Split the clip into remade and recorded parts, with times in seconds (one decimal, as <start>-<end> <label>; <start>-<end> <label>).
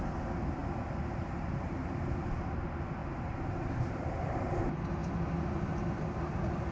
0.0-0.6 recorded; 0.6-2.4 remade; 2.4-3.0 recorded; 3.0-4.1 remade; 4.1-6.7 recorded